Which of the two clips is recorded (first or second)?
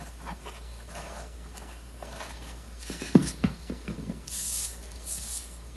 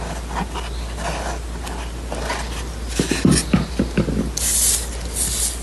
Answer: second